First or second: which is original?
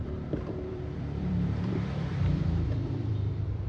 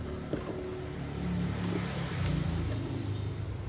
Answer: second